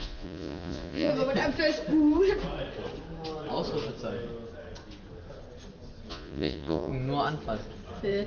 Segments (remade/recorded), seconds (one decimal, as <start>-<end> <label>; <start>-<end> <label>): 0.0-1.1 remade; 1.1-6.1 recorded; 6.1-6.9 remade; 6.9-8.3 recorded